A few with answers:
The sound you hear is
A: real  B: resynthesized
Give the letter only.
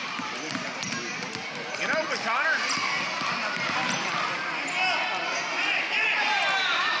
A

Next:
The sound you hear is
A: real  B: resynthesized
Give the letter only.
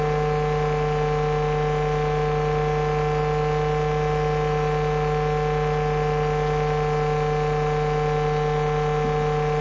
A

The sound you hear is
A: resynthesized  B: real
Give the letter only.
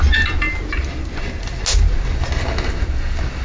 B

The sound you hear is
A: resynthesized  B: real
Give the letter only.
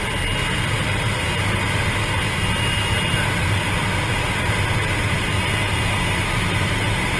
B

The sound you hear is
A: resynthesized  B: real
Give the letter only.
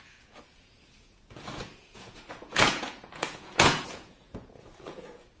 A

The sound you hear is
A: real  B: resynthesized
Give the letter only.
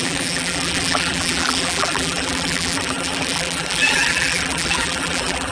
B